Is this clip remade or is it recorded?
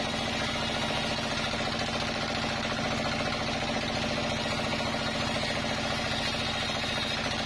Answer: recorded